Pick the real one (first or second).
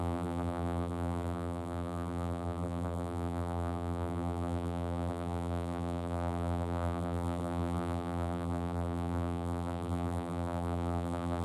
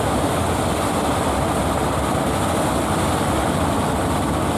second